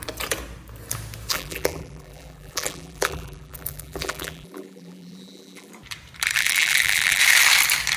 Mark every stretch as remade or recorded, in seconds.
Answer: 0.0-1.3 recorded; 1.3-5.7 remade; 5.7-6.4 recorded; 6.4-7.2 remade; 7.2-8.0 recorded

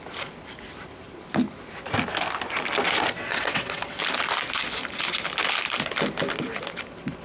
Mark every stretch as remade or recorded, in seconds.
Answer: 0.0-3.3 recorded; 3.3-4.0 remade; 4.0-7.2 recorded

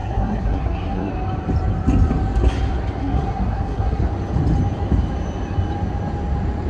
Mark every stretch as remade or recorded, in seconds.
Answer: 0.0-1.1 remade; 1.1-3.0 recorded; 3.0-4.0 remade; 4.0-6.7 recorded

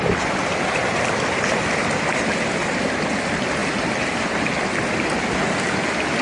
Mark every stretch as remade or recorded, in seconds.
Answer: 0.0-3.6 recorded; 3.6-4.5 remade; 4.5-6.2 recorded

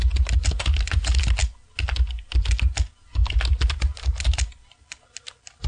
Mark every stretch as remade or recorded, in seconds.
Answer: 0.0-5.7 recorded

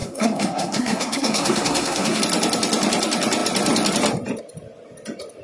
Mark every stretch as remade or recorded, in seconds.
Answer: 0.0-2.2 remade; 2.2-5.4 recorded

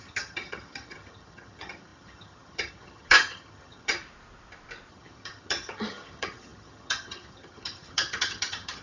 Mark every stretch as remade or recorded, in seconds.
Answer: 0.0-4.0 remade; 4.0-4.9 recorded; 4.9-8.8 remade

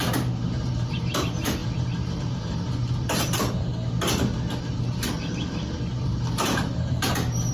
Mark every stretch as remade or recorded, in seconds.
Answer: 0.0-3.7 remade; 3.7-4.6 recorded; 4.6-7.5 remade